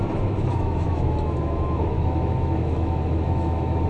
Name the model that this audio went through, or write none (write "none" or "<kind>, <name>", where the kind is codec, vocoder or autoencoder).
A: autoencoder, DAC-VAE